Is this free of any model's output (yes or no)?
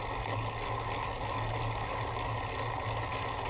yes